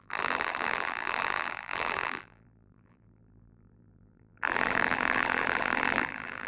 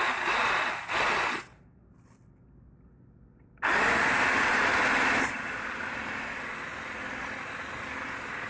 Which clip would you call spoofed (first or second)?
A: first